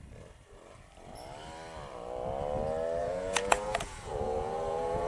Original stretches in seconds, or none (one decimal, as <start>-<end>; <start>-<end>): 0.0-3.0